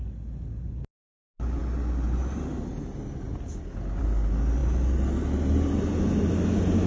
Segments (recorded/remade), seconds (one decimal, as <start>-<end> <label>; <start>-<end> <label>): 0.0-6.9 recorded